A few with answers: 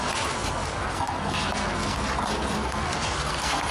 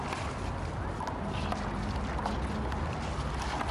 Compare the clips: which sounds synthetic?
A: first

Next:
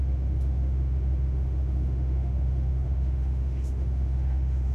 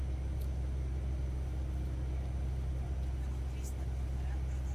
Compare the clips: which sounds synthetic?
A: first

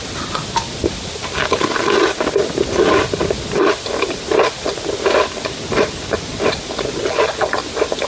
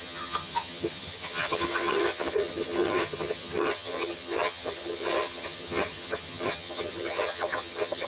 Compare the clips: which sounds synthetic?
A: second